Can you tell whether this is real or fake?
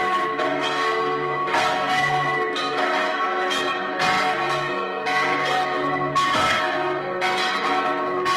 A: fake